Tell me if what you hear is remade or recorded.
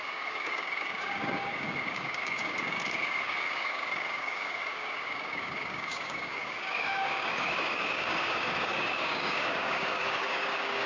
remade